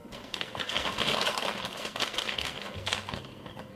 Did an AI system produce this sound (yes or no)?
yes